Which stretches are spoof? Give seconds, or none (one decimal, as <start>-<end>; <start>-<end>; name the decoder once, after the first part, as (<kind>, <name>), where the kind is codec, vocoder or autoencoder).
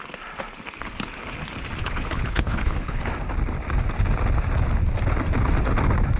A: 1.8-3.0 (codec, HILCodec)